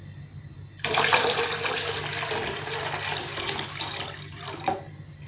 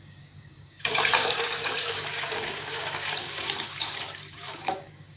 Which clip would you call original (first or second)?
first